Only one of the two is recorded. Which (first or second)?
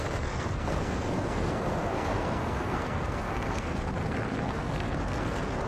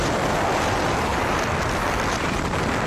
second